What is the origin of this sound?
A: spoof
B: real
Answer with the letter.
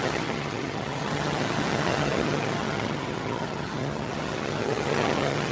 A